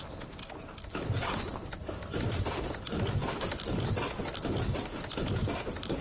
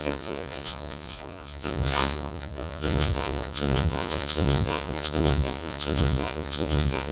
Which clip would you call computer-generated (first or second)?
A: second